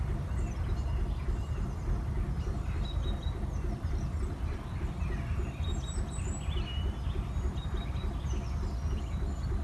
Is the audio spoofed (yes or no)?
yes